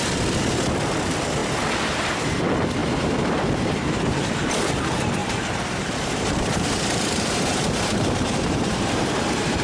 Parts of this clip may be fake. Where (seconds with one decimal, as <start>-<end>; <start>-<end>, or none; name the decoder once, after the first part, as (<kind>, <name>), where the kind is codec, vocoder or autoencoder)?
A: 2.8-4.7 (vocoder, BigVGAN v2); 5.2-9.6